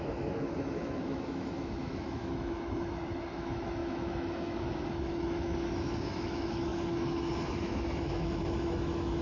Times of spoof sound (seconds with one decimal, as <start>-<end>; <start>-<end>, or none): 0.0-9.2